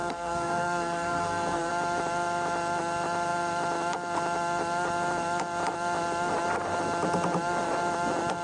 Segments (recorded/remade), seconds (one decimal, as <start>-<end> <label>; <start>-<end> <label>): 0.0-1.7 remade; 1.7-8.4 recorded